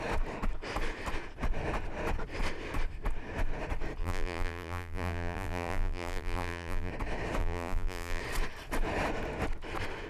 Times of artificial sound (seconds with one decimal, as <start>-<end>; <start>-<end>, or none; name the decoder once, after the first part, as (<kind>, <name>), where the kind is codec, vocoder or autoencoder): 4.0-6.9 (vocoder, BigVGAN v2); 7.4-8.2